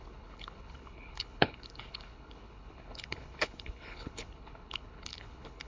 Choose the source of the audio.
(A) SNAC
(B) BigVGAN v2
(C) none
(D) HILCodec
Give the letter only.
D